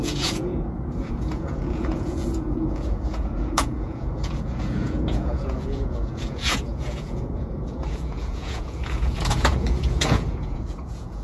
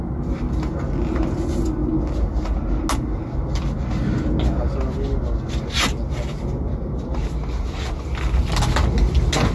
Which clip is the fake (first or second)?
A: first